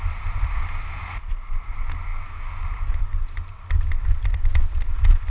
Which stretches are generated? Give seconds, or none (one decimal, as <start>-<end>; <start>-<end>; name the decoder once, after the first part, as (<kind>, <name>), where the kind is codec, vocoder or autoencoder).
none